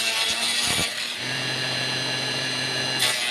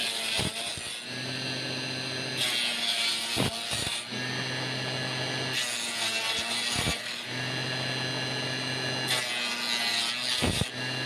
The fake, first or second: first